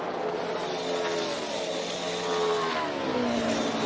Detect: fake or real real